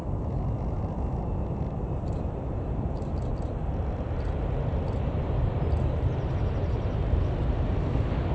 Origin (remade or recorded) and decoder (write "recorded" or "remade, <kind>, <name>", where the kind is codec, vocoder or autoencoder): recorded